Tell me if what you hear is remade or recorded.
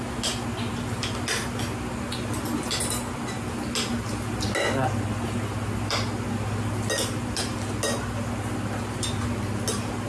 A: recorded